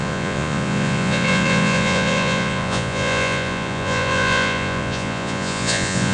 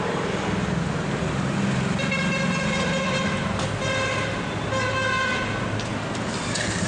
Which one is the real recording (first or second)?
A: second